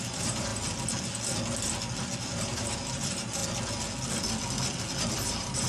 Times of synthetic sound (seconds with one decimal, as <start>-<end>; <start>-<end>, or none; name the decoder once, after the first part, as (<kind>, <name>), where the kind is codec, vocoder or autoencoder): 0.0-0.5 (vocoder, BigVGAN v2); 2.2-3.4; 5.1-5.7